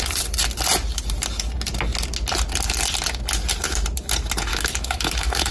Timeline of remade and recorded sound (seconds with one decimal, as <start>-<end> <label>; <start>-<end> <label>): 0.0-4.5 recorded; 4.5-5.5 remade